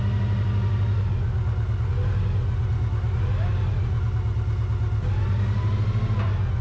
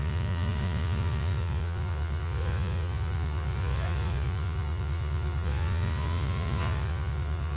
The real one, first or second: first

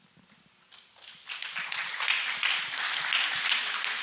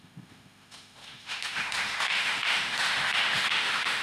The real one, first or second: first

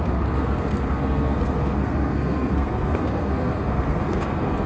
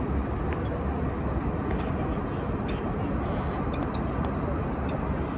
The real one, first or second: second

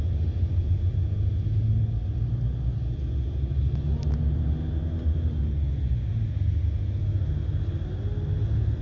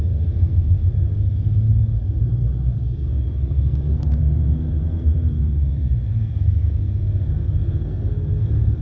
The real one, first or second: first